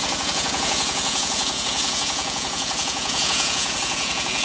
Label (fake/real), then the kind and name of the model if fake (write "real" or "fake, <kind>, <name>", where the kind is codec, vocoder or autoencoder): fake, vocoder, Vocos